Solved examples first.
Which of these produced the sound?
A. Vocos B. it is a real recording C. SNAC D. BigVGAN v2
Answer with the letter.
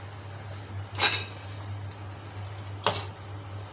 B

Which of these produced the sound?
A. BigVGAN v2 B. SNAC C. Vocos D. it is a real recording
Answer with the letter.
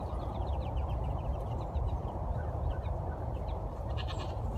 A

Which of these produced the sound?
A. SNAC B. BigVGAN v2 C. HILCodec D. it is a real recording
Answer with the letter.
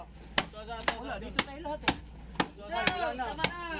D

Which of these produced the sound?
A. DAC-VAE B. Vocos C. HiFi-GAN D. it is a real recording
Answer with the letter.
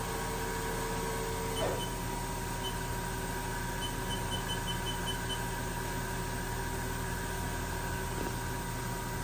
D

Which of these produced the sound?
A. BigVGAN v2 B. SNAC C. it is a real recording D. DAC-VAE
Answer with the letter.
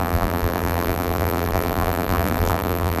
A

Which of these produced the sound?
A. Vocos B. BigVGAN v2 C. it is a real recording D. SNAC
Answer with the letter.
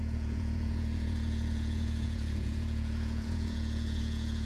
A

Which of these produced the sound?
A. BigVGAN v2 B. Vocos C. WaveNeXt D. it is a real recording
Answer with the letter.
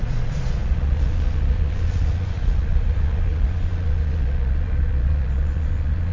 B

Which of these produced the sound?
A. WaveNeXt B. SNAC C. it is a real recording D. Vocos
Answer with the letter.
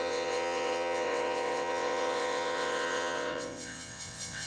A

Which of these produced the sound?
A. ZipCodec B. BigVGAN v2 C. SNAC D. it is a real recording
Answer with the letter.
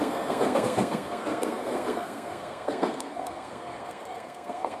C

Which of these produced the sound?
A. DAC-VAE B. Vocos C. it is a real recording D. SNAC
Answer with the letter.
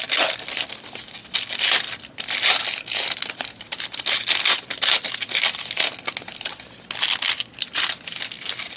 C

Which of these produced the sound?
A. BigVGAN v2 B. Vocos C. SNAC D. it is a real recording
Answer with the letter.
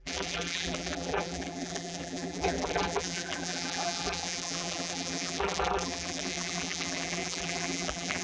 A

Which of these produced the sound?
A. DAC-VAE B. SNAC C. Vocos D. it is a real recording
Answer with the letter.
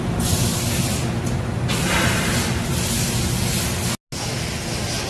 D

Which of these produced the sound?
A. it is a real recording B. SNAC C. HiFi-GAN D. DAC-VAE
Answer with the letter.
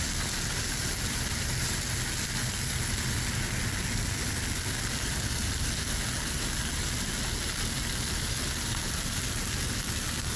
A